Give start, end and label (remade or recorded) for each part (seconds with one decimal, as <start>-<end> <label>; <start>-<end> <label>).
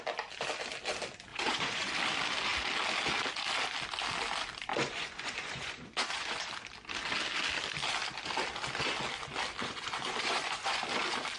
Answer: 0.0-1.3 recorded; 1.3-1.9 remade; 1.9-4.7 recorded; 4.7-6.4 remade; 6.4-9.6 recorded; 9.6-10.8 remade; 10.8-11.4 recorded